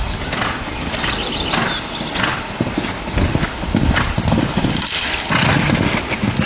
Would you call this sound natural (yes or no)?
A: yes